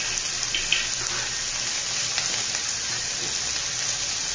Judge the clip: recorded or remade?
recorded